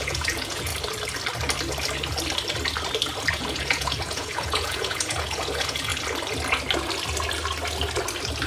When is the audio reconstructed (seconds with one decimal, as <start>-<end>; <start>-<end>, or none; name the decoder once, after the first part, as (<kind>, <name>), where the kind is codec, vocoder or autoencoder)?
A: 0.0-0.7 (vocoder, Vocos); 3.3-5.9